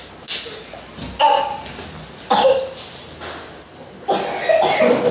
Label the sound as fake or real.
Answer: real